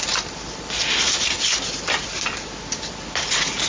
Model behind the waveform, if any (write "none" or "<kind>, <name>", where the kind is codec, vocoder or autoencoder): none